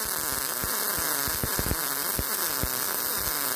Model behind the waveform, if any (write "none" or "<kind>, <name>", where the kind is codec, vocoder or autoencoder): none